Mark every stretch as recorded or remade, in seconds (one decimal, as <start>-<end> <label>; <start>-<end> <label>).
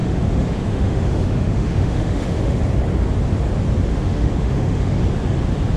0.0-2.6 remade; 2.6-3.9 recorded; 3.9-5.0 remade; 5.0-5.8 recorded